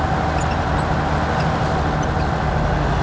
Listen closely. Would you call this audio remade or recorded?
recorded